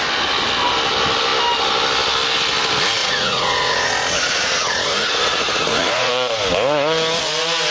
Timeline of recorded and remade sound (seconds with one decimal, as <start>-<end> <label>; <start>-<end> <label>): 0.0-3.0 recorded; 3.0-6.1 remade; 6.1-7.7 recorded